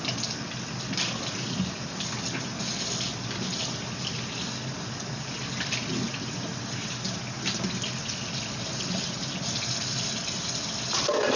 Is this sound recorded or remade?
recorded